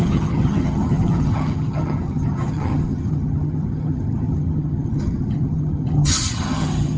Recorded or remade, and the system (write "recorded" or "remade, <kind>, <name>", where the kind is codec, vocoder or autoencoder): remade, vocoder, HiFi-GAN